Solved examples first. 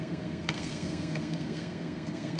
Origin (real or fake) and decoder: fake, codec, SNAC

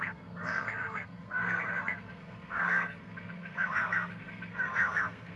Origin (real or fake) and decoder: fake, codec, SNAC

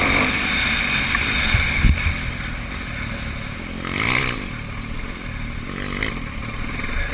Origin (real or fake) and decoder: real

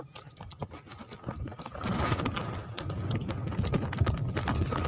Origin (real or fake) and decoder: real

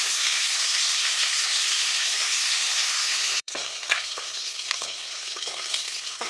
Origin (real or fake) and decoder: fake, codec, SNAC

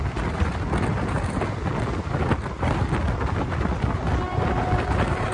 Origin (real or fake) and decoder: real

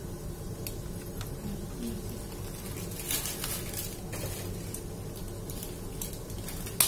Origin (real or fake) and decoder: real